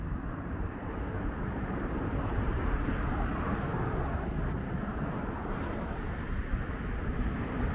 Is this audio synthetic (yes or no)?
yes